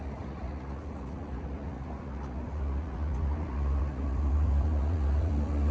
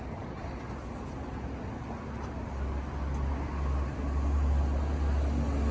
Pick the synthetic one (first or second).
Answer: first